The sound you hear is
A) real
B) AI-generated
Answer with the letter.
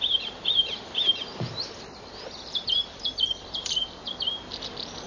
B